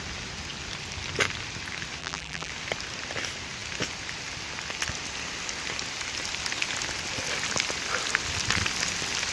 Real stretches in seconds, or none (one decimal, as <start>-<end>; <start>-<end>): 0.0-2.0; 2.5-9.3